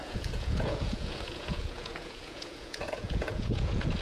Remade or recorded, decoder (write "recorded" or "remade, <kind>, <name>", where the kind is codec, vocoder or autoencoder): remade, vocoder, Vocos